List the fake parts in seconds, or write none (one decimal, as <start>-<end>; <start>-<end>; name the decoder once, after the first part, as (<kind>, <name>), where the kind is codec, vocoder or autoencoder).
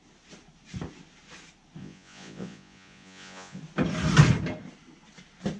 1.8-3.6 (vocoder, Vocos)